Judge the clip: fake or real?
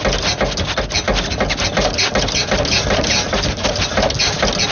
real